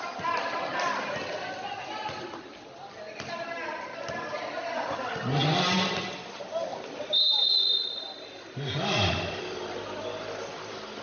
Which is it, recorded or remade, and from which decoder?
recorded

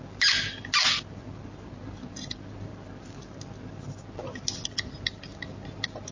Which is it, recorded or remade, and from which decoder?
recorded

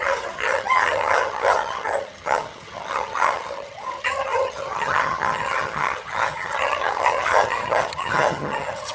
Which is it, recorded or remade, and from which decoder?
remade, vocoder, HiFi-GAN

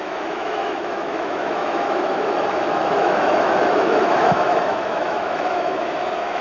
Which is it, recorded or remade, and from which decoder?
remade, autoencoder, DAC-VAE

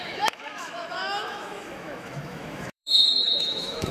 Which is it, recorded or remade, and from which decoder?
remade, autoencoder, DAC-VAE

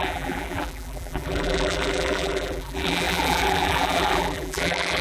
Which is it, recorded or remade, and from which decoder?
remade, vocoder, BigVGAN v2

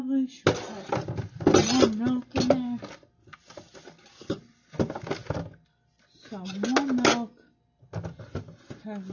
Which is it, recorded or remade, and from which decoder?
recorded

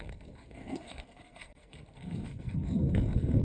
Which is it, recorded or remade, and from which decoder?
remade, codec, SNAC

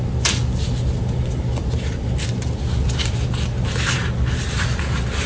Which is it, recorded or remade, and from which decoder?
recorded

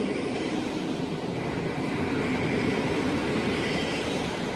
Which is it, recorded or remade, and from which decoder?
remade, vocoder, BigVGAN v2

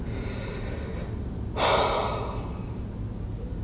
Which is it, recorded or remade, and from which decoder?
recorded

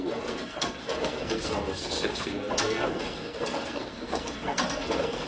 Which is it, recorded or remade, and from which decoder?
remade, codec, SNAC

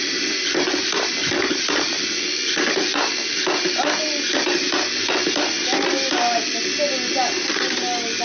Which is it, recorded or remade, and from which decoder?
recorded